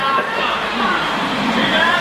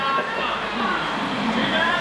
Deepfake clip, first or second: first